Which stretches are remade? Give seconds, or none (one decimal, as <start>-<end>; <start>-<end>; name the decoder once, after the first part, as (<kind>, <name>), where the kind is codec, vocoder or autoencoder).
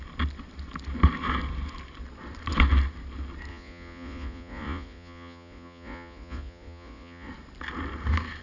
3.5-7.3 (vocoder, Vocos)